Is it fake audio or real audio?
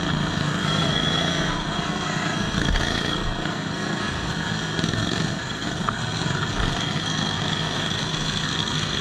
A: fake